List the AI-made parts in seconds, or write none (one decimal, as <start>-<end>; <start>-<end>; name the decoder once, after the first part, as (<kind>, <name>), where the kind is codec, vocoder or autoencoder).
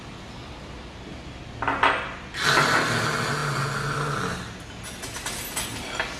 none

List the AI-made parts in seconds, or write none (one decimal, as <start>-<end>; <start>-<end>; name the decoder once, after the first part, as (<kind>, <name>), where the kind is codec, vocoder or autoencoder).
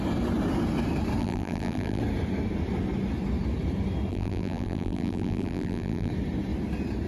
1.2-2.0 (vocoder, BigVGAN v2); 4.1-6.1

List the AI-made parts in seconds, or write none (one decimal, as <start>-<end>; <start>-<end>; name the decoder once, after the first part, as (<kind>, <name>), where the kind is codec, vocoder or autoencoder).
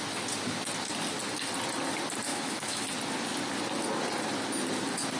2.3-2.8 (autoencoder, DAC-VAE)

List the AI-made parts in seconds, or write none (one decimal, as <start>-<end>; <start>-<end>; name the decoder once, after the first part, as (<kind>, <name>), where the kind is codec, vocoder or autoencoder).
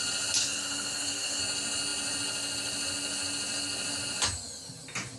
0.4-1.4 (codec, SNAC)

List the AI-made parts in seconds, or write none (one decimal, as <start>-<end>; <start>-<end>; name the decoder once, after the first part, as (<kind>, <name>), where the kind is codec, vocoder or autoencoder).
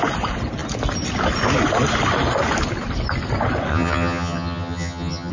3.7-5.3 (vocoder, HiFi-GAN)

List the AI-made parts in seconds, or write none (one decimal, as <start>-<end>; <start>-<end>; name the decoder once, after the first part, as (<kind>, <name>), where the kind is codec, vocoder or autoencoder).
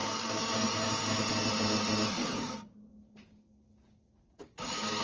0.0-0.5 (codec, DAC); 2.2-5.0